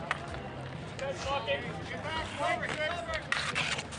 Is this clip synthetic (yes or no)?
no